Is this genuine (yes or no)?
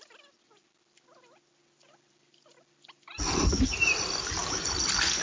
yes